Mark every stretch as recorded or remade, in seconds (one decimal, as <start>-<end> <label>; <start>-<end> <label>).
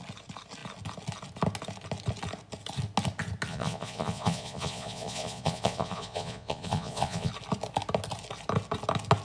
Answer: 0.0-3.5 recorded; 3.5-7.3 remade; 7.3-9.2 recorded